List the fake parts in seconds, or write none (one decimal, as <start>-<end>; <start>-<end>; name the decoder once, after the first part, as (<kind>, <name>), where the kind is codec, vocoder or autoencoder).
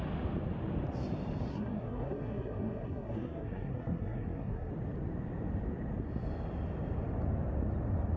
1.5-4.7 (codec, SNAC)